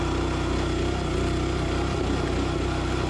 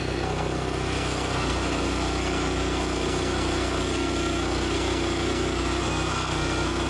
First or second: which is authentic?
first